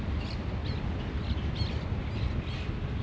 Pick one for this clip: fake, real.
real